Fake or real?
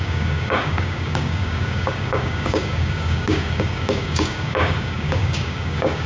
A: fake